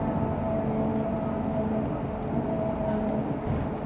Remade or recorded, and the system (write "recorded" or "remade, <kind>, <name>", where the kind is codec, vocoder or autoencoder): recorded